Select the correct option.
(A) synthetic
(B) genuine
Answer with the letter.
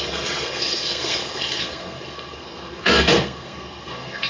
A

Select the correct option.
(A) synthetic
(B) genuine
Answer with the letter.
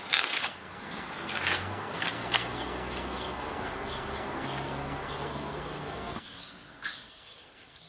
A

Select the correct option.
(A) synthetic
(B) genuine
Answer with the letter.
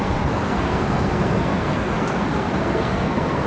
A